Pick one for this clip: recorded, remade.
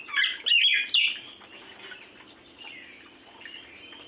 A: recorded